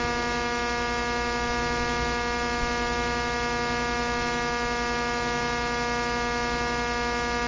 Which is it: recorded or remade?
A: recorded